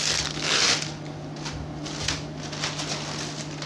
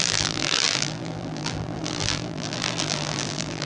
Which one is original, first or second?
first